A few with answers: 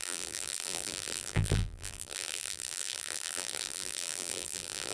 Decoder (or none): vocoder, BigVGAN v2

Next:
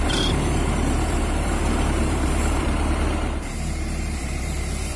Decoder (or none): vocoder, BigVGAN v2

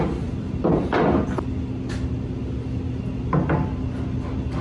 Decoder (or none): none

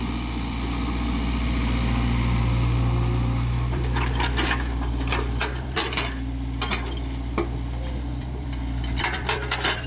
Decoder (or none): vocoder, BigVGAN v2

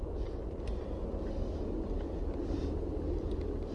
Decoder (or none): none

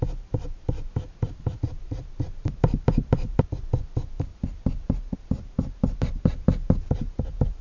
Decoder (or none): vocoder, BigVGAN v2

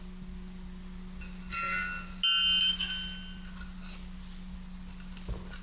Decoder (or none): none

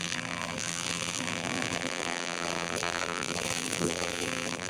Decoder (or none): vocoder, BigVGAN v2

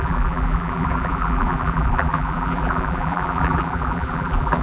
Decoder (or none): vocoder, BigVGAN v2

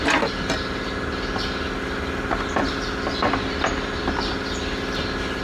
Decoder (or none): none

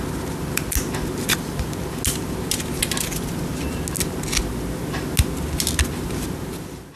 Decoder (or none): none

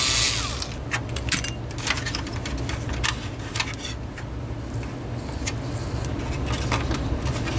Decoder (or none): none